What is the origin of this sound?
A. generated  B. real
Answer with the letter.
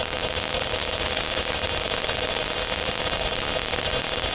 B